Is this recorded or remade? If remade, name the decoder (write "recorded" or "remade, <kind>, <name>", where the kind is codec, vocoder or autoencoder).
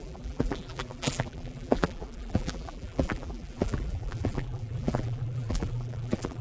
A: remade, vocoder, BigVGAN v2